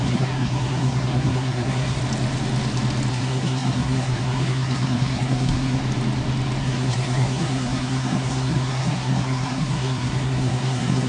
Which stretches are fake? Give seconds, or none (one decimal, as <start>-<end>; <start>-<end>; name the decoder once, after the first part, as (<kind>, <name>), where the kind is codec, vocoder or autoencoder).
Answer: 0.0-2.0 (codec, SNAC); 3.1-5.8; 6.6-11.1